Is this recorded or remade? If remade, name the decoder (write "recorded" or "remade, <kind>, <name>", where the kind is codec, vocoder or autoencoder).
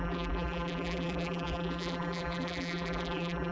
remade, vocoder, BigVGAN v2